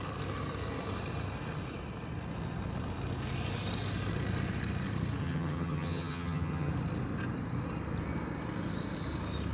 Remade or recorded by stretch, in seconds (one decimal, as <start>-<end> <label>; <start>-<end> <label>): 0.0-5.2 recorded; 5.2-6.7 remade; 6.7-9.5 recorded